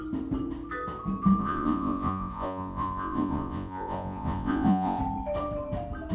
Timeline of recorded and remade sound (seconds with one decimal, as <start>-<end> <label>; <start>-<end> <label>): 0.0-1.4 recorded; 1.4-5.0 remade; 5.0-6.1 recorded